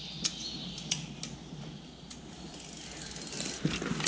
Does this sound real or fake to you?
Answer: real